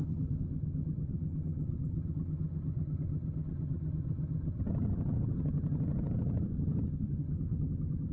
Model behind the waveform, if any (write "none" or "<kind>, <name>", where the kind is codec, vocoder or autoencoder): vocoder, HiFi-GAN